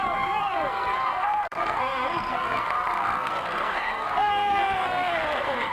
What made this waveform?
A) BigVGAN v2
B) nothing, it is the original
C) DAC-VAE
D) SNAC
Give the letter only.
D